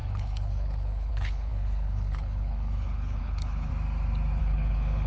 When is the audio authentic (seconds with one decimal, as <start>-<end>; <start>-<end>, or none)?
3.7-4.4